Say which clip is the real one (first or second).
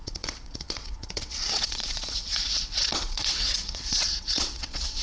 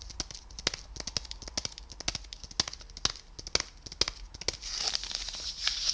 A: second